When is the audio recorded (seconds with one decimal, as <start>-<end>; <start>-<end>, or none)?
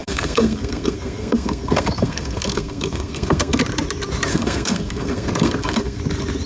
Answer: 3.6-4.3; 6.0-6.5